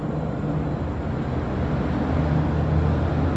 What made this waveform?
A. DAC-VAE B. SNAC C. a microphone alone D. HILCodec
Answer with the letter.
C